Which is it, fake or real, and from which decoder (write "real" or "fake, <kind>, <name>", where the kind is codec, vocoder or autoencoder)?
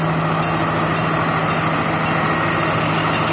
real